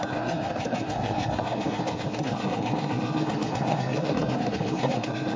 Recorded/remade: remade